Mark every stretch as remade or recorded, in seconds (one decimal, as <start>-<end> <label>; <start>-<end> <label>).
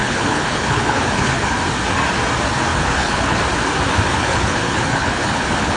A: 0.0-1.5 remade; 1.5-2.7 recorded; 2.7-3.4 remade; 3.4-4.2 recorded; 4.2-5.8 remade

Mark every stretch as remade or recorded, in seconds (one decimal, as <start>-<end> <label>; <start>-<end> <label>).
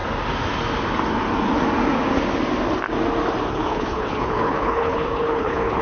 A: 0.0-3.5 recorded; 3.5-5.8 remade